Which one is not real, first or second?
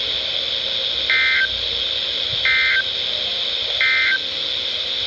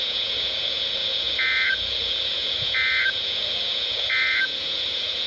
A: second